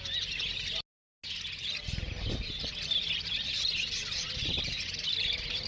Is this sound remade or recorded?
recorded